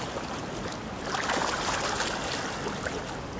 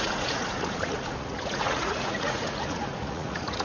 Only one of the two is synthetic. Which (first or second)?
second